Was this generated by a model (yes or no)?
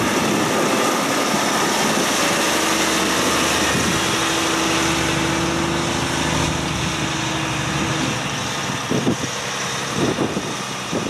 no